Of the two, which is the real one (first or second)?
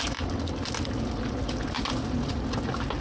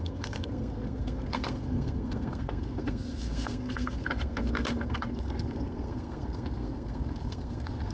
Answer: first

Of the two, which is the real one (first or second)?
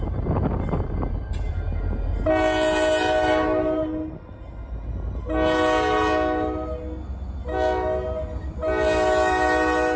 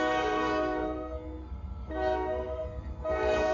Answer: first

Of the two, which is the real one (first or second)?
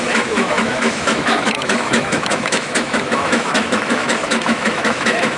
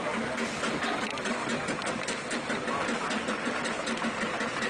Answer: second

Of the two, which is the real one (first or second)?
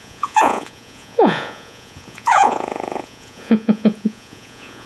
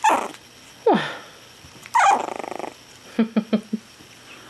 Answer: second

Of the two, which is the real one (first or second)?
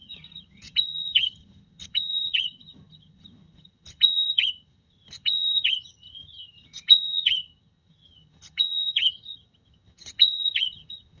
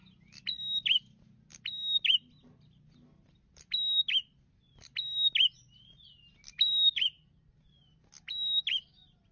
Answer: second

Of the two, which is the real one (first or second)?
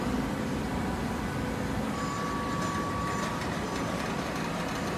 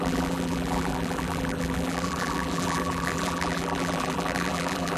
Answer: first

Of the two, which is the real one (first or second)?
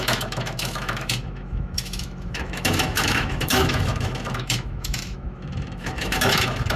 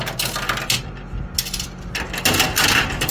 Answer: second